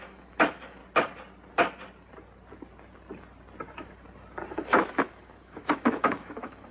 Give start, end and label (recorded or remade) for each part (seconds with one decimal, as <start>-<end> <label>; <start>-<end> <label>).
0.0-0.8 remade; 0.8-4.5 recorded; 4.5-6.7 remade